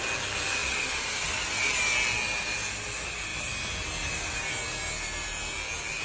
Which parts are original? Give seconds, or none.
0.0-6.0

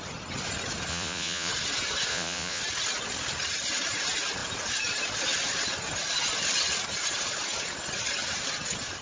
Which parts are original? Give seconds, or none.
0.0-0.9; 1.5-2.1; 2.6-9.0

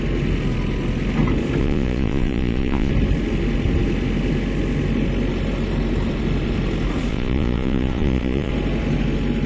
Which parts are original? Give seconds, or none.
0.0-1.6; 2.9-7.1; 8.5-9.5